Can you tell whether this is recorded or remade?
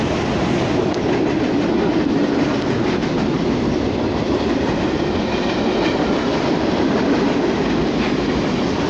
recorded